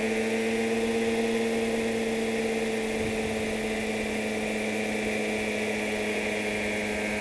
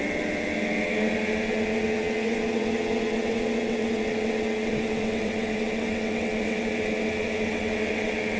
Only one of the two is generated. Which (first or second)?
second